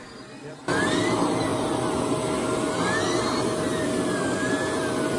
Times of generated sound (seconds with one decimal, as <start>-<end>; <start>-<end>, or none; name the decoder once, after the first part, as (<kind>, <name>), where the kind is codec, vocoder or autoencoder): 0.0-1.5 (vocoder, BigVGAN v2); 3.0-5.2